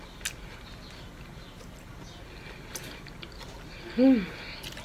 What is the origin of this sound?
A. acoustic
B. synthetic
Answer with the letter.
A